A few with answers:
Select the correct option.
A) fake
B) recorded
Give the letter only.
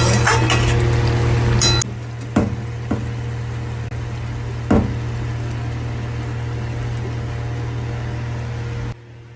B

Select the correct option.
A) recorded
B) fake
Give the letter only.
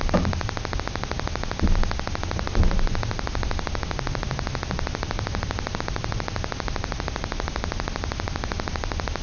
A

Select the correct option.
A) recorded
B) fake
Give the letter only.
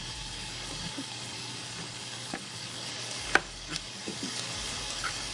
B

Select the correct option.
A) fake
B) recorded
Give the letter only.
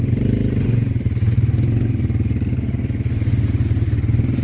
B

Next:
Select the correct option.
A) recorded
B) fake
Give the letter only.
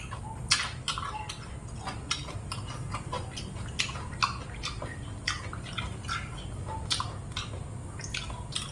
A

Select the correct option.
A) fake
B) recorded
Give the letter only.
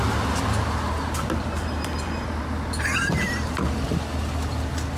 B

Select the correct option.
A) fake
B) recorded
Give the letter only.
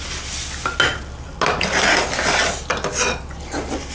B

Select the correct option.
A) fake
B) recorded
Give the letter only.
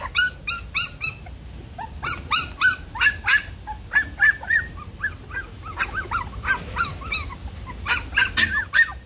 B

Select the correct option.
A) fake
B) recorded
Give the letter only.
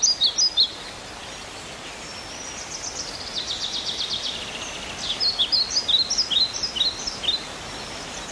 B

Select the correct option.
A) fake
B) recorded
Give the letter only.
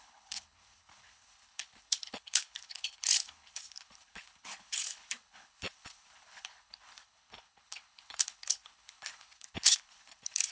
A